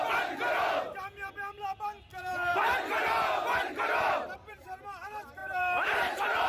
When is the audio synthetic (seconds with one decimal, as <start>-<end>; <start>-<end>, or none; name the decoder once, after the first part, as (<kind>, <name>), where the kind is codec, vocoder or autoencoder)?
2.3-4.5 (vocoder, BigVGAN v2); 5.4-6.5